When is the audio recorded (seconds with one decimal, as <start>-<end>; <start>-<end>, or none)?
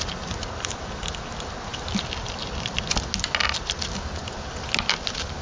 0.0-5.4